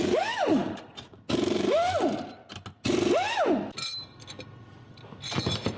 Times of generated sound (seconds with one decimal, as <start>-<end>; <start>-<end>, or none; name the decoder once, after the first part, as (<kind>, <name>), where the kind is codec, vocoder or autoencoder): 0.0-1.2 (vocoder, Vocos)